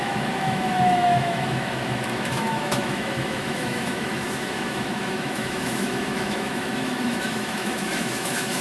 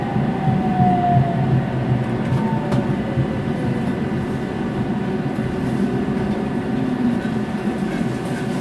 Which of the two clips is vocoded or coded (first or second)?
first